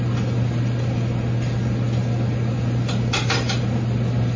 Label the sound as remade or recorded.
recorded